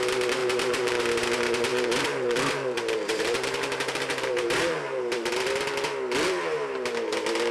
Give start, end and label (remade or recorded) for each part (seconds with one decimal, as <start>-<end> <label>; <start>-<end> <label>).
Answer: 0.0-0.4 recorded; 0.4-1.0 remade; 1.0-1.7 recorded; 1.7-5.3 remade; 5.3-7.5 recorded